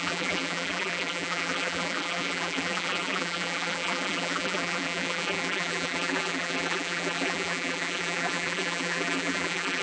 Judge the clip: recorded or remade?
remade